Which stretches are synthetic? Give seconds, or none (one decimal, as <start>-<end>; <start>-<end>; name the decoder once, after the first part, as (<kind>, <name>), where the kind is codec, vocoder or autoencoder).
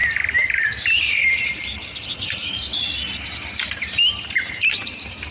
1.0-2.7 (vocoder, BigVGAN v2); 3.2-5.3